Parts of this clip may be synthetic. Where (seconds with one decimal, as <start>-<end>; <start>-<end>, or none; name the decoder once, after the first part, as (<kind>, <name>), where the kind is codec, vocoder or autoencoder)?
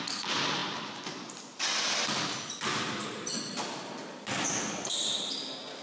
none